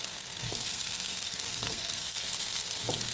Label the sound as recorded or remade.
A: remade